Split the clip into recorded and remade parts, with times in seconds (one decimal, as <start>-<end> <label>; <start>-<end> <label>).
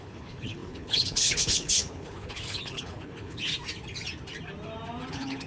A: 0.0-3.5 remade; 3.5-5.1 recorded; 5.1-5.5 remade